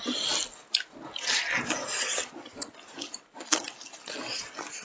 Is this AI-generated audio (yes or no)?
no